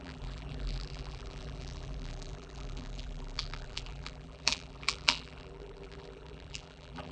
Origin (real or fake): fake